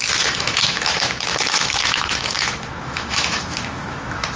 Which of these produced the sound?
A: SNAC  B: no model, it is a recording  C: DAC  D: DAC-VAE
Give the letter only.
D